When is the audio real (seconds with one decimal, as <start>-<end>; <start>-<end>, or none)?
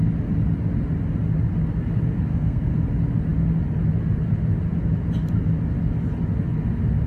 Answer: 0.0-2.3; 2.8-7.1